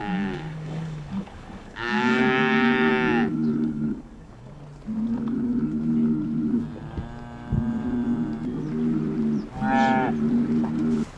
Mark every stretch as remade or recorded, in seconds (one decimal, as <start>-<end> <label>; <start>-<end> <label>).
0.0-2.9 remade; 2.9-3.3 recorded; 3.3-4.6 remade; 4.6-11.2 recorded